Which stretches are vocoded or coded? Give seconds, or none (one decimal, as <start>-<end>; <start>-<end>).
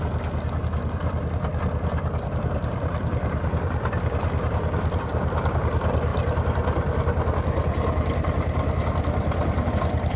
0.6-5.1; 5.6-6.1; 9.7-10.2